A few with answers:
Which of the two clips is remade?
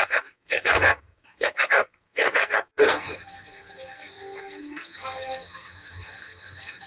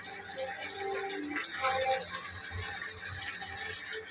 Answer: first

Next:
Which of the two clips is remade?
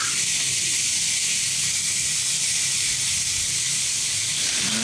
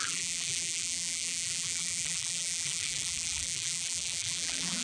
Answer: second